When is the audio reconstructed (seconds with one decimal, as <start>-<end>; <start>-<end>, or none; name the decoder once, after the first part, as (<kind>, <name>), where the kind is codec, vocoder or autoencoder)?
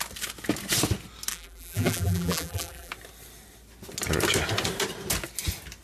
1.3-2.9 (vocoder, BigVGAN v2)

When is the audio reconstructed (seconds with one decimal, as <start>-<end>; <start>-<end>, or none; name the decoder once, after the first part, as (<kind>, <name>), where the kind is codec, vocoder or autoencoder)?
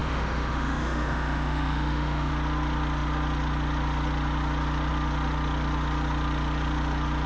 0.0-2.3 (autoencoder, DAC-VAE)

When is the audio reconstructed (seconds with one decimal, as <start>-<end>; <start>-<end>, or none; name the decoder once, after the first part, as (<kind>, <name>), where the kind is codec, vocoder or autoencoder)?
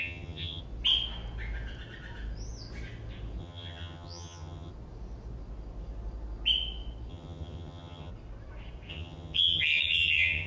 0.0-0.6 (vocoder, HiFi-GAN); 3.4-4.7; 7.1-8.1; 8.9-10.5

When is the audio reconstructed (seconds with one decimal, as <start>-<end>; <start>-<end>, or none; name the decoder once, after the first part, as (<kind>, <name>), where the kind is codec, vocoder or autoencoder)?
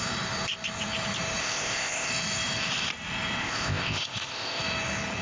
1.4-2.1 (codec, ZipCodec); 3.4-4.6